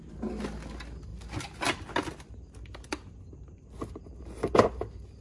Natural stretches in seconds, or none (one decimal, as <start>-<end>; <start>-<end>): 0.0-5.2